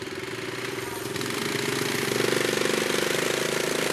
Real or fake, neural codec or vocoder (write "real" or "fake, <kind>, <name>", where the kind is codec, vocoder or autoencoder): real